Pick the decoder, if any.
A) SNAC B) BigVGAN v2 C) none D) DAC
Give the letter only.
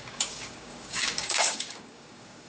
D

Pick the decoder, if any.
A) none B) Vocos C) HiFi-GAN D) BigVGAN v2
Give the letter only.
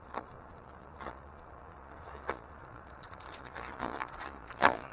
B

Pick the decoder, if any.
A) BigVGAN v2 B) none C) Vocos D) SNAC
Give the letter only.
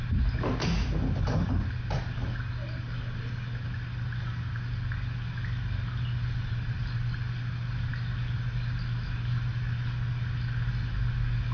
B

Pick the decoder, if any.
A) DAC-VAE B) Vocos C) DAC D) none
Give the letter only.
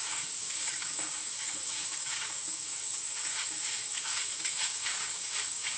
C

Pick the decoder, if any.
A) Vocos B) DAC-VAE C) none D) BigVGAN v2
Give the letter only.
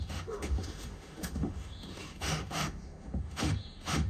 B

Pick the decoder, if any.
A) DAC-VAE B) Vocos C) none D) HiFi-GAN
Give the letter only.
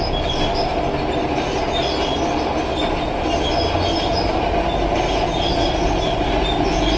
C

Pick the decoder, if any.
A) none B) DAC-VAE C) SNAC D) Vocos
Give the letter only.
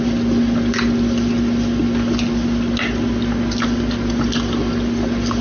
A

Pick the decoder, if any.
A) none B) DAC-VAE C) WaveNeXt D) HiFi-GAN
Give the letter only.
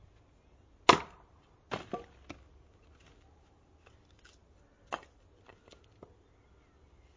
A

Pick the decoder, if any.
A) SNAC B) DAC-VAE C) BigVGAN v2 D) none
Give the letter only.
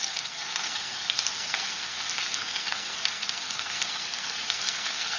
A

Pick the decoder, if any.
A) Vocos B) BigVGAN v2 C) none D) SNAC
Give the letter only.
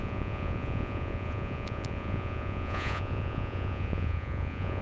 A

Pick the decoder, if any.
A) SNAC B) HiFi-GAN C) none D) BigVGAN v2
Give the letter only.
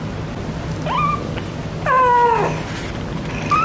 C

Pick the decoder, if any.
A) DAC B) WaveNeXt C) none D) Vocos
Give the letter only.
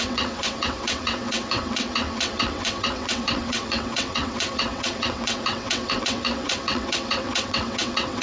B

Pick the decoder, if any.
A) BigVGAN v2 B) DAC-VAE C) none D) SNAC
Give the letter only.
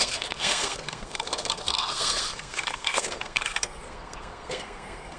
D